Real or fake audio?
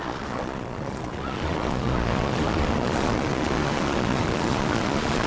fake